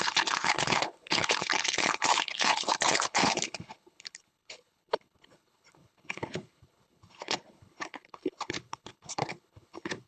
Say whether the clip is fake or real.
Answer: fake